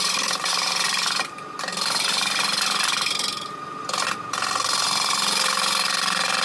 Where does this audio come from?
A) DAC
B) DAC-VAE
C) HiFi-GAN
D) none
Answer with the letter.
D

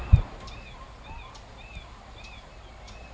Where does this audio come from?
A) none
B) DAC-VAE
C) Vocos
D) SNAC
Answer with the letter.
A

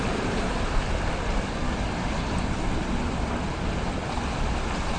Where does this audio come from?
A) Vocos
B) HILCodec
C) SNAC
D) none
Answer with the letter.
D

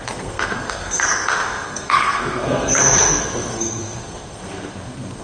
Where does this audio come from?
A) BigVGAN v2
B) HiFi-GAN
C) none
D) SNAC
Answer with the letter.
D